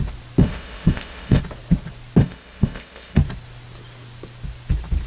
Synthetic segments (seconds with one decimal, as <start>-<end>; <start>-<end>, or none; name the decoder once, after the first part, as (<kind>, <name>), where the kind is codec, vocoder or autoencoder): 0.4-1.4 (codec, ZipCodec); 2.2-3.2